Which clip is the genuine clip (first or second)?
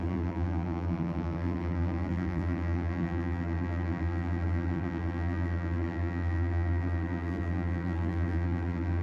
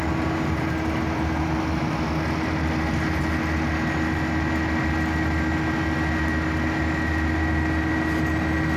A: second